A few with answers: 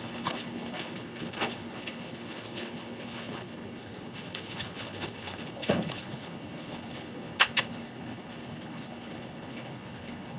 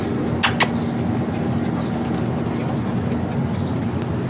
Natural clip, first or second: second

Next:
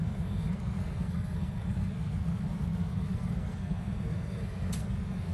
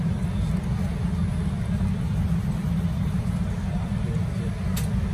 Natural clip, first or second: second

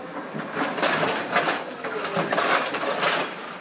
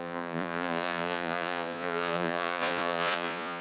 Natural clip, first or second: first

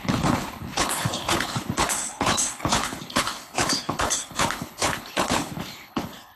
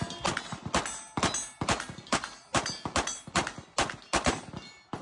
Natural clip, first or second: second